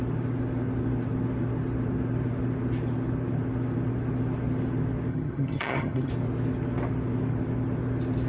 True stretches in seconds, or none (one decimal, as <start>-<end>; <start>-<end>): 0.0-5.1; 6.1-8.3